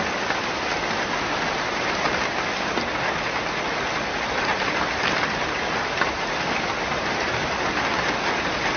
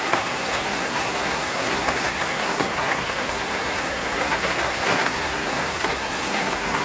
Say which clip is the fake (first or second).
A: second